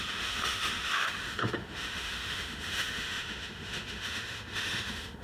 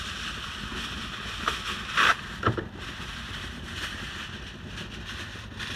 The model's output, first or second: first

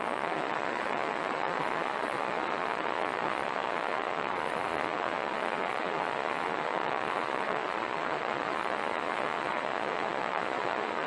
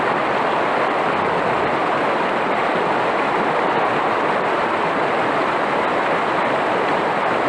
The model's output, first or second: first